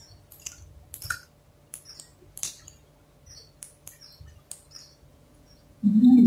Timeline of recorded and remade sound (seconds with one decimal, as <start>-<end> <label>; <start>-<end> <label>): 0.0-5.1 recorded; 5.1-6.3 remade